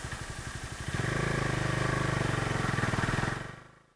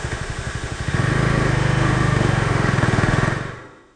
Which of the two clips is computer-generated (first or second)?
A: second